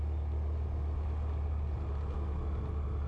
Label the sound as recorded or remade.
recorded